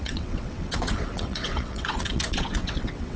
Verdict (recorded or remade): remade